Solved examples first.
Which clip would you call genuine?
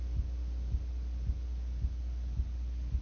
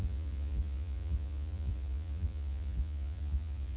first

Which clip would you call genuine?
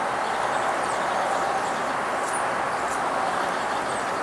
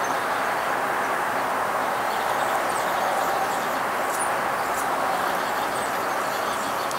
second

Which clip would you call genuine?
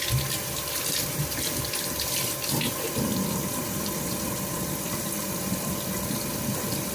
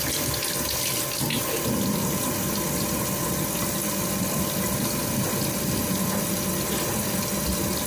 second